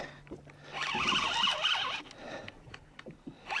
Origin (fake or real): real